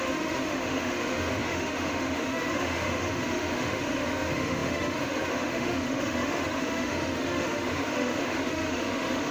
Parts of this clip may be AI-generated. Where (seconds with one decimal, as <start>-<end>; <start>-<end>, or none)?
0.0-9.3